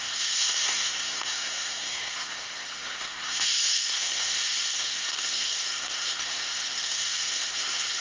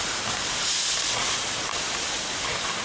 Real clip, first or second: second